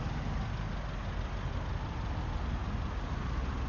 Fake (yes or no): no